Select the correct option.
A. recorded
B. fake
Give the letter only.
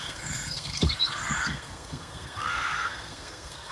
B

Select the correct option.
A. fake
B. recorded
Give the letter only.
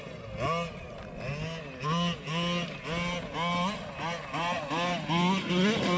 B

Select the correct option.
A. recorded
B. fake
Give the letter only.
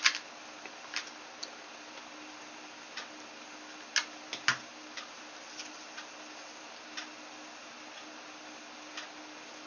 A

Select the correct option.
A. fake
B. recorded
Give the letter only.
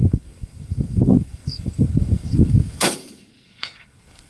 A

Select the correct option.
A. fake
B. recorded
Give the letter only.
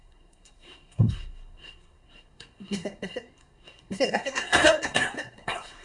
A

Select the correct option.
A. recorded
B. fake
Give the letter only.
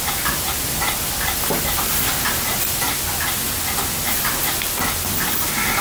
A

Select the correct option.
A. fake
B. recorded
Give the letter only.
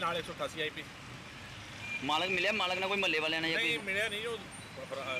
B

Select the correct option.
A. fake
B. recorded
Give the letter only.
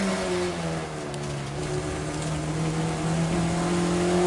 B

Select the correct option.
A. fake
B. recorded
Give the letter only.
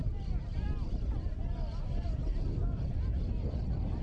B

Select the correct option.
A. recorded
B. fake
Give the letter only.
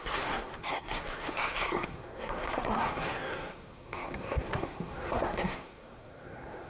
B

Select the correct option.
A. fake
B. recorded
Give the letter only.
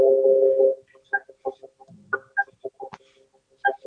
B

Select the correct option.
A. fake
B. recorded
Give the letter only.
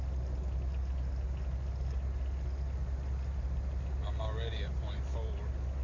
B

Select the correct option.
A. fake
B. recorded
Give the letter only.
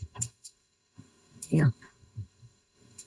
A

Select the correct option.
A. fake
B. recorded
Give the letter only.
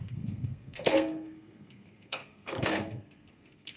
A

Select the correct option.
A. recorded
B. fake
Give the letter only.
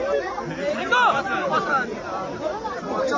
A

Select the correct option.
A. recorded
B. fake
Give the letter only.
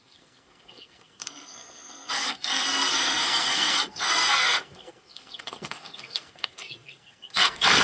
B